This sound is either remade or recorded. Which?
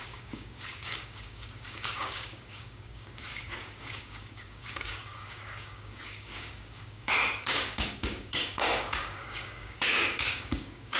remade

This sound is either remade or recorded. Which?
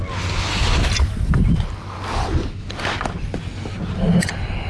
recorded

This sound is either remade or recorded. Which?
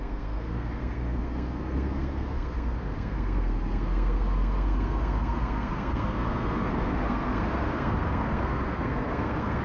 remade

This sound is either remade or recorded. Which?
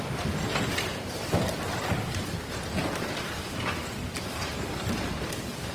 recorded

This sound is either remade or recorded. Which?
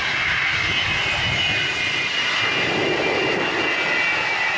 recorded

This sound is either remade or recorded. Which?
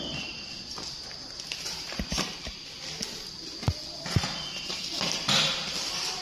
recorded